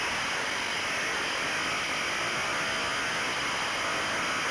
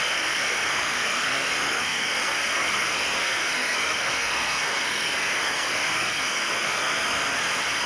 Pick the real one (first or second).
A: first